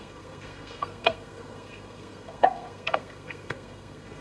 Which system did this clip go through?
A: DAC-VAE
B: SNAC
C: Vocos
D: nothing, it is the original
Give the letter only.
B